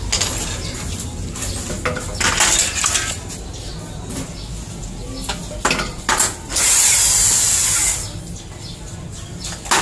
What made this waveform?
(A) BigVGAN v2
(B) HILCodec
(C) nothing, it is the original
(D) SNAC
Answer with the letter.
C